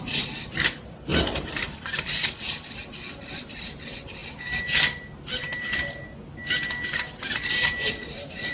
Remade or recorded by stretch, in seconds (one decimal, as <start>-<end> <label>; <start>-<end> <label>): 0.0-4.2 remade; 4.2-7.9 recorded; 7.9-8.5 remade